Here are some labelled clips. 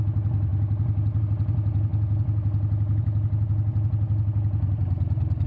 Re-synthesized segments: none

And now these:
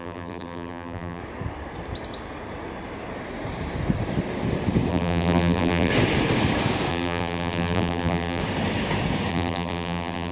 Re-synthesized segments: 0.0-1.2 (vocoder, BigVGAN v2); 4.9-5.9; 6.9-8.4; 9.3-10.3

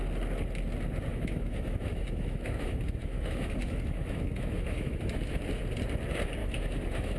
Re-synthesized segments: 1.1-5.4 (autoencoder, DAC-VAE); 6.4-7.2